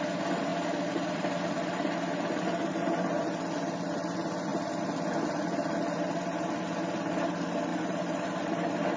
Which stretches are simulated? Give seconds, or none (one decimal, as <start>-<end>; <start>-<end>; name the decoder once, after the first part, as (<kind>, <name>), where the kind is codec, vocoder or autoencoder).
none